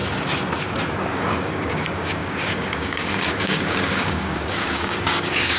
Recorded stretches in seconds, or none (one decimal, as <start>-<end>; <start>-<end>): 0.0-0.9